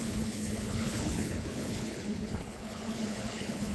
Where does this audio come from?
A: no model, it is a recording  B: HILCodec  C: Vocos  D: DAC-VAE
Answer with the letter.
B